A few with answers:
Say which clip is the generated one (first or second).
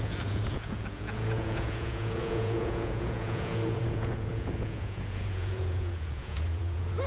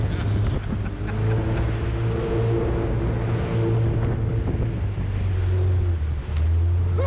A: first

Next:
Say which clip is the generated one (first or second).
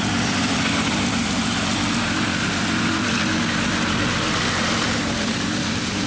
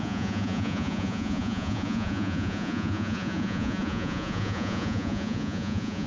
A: second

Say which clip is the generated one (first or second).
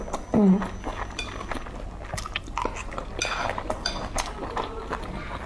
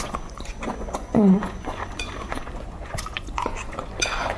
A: second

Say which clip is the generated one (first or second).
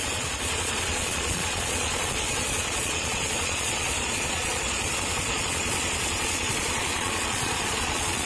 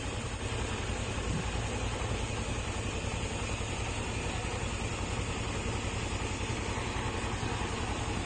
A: first